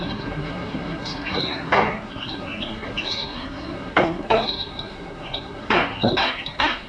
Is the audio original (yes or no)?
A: no